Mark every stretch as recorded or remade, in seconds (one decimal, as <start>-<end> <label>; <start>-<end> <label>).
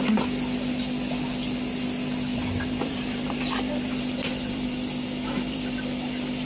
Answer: 0.0-2.3 recorded; 2.3-6.5 remade